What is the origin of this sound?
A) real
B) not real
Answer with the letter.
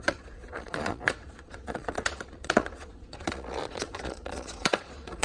B